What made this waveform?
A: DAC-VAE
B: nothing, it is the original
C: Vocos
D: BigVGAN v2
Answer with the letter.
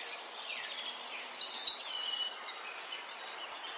B